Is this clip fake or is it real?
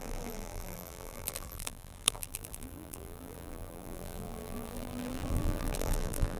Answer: fake